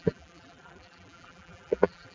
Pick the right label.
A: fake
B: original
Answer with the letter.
A